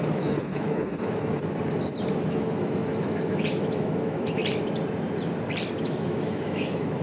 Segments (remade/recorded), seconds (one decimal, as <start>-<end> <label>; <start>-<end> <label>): 0.0-1.4 remade; 1.4-2.3 recorded; 2.3-4.4 remade; 4.4-5.8 recorded; 5.8-7.0 remade